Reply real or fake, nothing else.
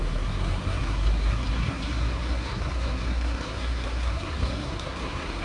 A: fake